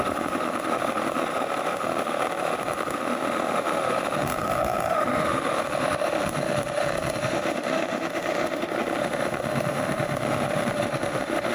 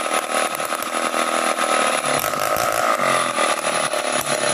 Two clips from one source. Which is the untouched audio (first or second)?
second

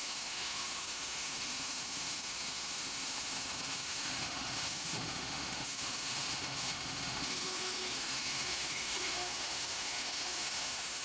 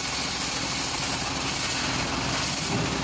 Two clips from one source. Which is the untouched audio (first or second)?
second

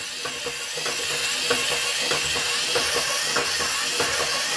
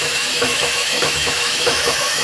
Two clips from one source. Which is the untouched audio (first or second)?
first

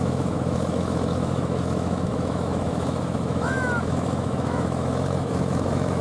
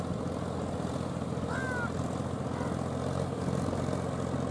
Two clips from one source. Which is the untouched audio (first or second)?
second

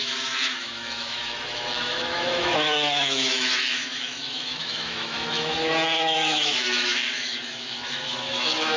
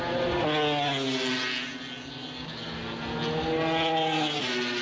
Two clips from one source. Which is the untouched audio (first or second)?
second